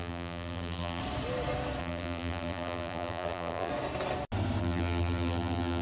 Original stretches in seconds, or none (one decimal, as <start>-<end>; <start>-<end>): 1.0-1.8; 3.7-4.6

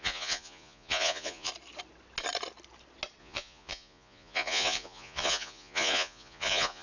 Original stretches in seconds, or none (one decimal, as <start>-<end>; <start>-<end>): 1.5-3.2